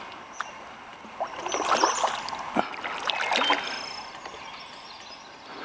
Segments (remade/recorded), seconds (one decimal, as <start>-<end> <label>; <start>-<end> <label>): 0.0-5.6 recorded